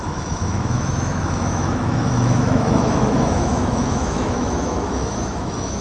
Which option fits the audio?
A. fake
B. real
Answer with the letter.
A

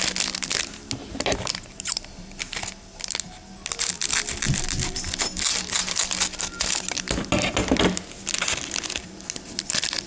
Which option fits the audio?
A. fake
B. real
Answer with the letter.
B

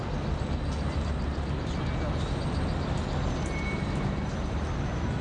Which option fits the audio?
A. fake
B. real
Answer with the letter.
B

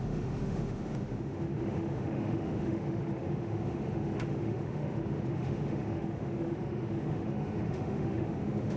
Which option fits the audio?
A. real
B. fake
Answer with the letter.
B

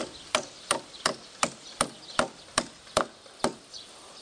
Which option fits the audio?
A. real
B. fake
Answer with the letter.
A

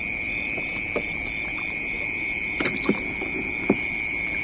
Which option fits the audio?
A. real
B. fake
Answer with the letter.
A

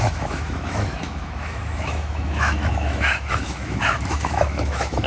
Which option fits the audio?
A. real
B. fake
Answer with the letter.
B